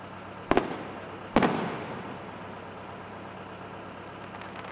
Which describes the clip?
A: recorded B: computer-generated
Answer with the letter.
A